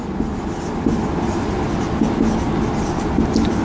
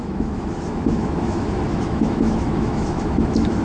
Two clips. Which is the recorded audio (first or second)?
first